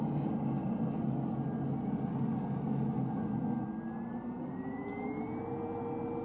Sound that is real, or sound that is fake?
real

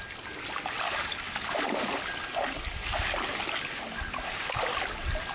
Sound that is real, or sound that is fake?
real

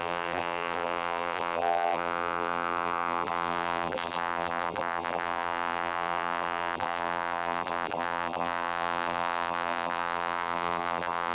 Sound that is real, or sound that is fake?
fake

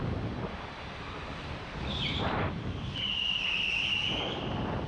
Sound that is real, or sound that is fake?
fake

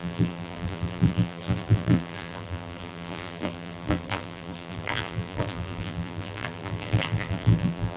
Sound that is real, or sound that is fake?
fake